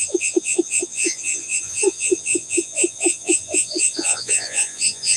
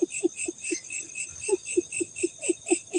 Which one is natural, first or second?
second